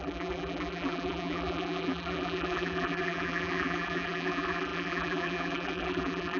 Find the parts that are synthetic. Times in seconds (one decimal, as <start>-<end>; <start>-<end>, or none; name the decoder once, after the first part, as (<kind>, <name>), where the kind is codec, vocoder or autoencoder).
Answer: 0.0-6.4 (vocoder, BigVGAN v2)